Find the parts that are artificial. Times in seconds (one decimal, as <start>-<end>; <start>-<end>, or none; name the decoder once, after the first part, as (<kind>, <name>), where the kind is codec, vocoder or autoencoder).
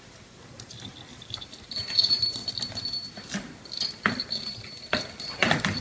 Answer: 0.0-2.4 (vocoder, BigVGAN v2); 4.8-5.8